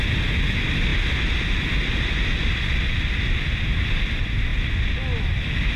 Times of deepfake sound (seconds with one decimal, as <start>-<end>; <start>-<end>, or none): none